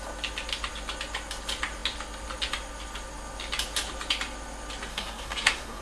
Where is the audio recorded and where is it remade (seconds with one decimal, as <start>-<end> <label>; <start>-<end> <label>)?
0.0-4.9 recorded; 4.9-5.8 remade